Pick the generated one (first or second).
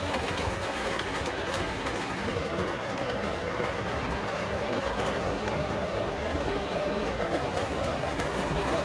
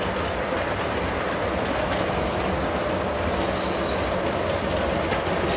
first